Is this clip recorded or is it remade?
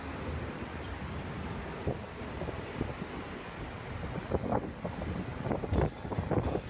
recorded